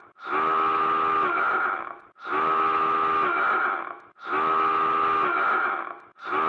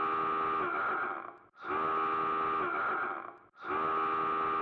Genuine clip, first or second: second